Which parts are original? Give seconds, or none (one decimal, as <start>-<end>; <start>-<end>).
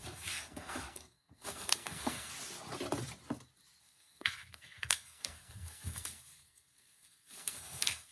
2.3-3.8